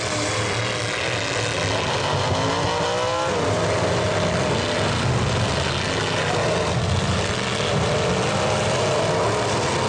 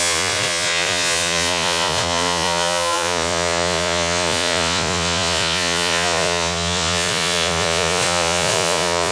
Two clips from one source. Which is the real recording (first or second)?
first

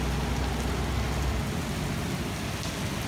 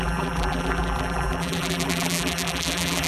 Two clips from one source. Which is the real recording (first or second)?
first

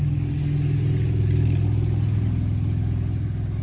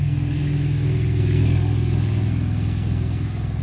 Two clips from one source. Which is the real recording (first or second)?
first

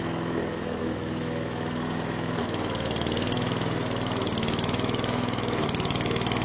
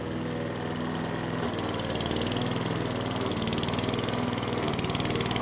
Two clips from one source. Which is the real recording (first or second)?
second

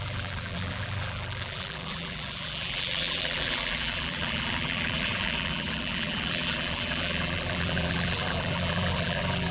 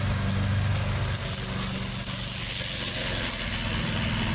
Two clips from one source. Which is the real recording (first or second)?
second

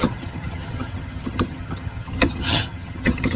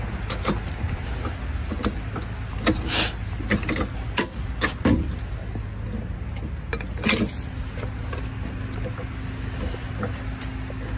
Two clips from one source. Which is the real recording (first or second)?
second